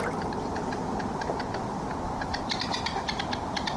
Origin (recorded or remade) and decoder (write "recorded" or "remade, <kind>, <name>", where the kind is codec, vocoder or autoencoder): recorded